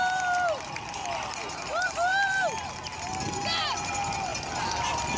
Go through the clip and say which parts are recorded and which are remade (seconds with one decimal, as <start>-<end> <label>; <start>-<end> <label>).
0.0-5.2 recorded